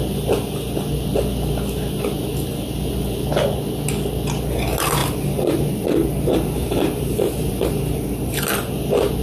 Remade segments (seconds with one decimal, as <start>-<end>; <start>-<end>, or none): 5.0-8.4